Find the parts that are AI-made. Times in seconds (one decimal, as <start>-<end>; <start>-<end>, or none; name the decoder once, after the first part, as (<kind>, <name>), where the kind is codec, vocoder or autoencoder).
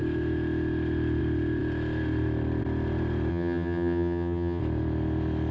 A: 3.3-4.6 (vocoder, HiFi-GAN)